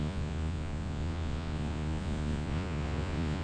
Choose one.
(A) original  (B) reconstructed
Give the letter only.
B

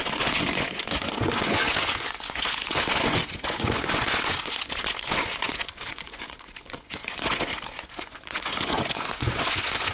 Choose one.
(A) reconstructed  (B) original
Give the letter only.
A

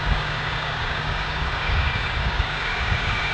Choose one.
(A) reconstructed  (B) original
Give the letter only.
A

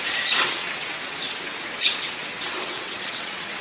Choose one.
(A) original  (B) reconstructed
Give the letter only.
B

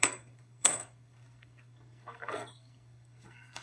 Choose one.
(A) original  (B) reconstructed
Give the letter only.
B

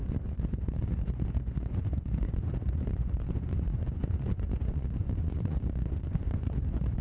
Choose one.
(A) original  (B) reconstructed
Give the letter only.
B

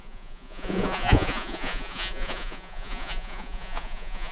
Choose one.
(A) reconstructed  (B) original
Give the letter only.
A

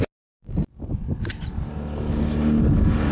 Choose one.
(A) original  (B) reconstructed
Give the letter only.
A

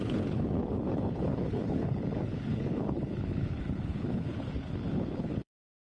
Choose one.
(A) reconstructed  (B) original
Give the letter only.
A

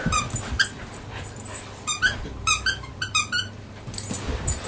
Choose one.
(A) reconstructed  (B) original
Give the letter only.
A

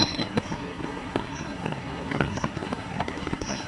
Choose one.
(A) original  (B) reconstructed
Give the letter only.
B